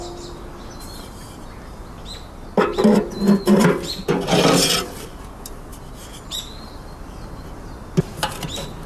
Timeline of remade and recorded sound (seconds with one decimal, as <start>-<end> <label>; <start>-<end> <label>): 0.0-8.9 recorded